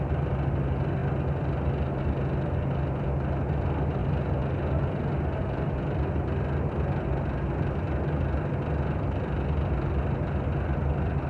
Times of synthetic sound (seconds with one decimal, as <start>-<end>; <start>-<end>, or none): none